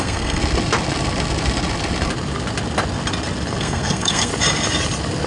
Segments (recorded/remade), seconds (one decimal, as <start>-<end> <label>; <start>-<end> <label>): 0.0-0.4 remade; 0.4-3.6 recorded; 3.6-4.3 remade; 4.3-5.3 recorded